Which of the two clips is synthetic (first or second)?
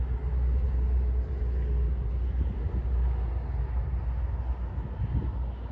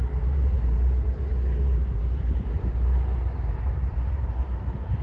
second